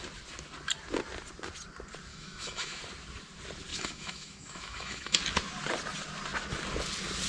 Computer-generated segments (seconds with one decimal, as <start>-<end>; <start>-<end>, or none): 2.1-2.8; 3.7-5.2